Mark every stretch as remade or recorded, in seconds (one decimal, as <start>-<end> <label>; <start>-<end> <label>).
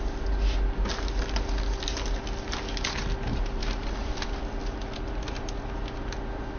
0.0-3.3 recorded; 3.3-3.9 remade; 3.9-6.6 recorded